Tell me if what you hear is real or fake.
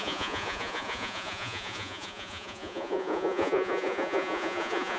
fake